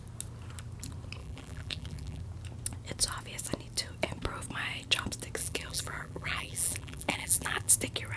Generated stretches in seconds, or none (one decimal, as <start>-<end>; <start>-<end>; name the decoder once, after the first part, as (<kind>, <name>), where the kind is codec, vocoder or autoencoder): 1.2-2.2 (vocoder, BigVGAN v2); 5.4-7.7

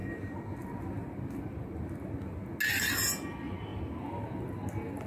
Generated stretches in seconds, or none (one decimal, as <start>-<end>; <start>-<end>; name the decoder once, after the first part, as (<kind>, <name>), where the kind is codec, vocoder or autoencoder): none

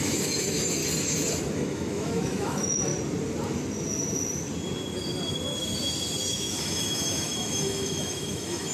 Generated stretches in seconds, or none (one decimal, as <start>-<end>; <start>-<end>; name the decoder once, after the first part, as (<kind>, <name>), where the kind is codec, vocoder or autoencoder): 0.0-0.8 (autoencoder, DAC-VAE); 1.5-2.9; 6.3-8.7

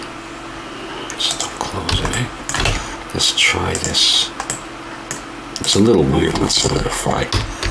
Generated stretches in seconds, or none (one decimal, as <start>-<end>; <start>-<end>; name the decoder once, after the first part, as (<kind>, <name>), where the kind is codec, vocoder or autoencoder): 6.1-7.2 (codec, SNAC)

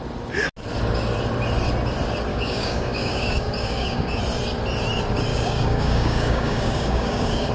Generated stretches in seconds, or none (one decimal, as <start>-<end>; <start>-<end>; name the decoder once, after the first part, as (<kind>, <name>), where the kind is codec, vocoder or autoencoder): 2.3-4.2 (codec, DAC); 5.3-7.5

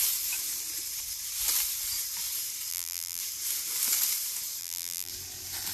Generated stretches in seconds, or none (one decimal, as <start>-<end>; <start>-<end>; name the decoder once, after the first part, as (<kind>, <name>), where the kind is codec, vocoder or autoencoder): 2.7-3.2 (vocoder, BigVGAN v2); 4.6-5.1

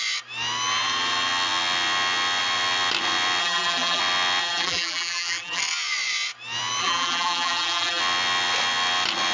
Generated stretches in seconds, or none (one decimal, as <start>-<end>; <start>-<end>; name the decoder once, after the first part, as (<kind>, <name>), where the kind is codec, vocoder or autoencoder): 3.4-4.0 (vocoder, BigVGAN v2); 4.4-5.6; 6.8-8.0